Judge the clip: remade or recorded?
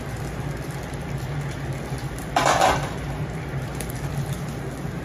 remade